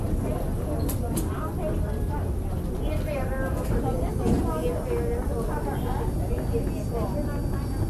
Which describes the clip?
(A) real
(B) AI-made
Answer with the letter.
A